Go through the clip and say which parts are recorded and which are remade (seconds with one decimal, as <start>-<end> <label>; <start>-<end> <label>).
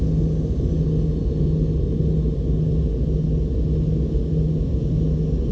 0.0-5.5 recorded